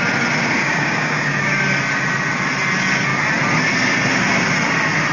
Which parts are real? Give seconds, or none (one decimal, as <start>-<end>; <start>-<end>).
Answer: 0.0-0.6; 1.6-5.1